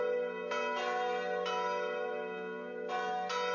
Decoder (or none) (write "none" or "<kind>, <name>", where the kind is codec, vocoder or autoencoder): none